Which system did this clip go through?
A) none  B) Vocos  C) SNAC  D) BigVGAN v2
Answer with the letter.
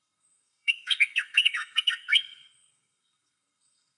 C